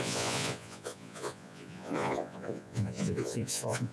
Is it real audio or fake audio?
fake